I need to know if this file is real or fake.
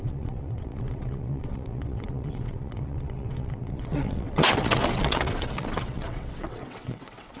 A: fake